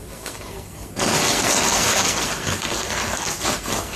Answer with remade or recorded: remade